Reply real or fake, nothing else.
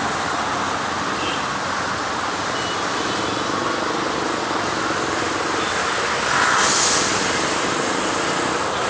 real